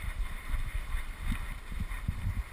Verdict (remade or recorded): remade